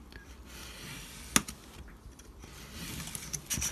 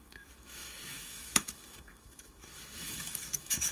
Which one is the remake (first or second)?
second